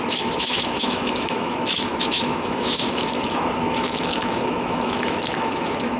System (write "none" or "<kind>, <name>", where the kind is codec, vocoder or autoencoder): autoencoder, DAC-VAE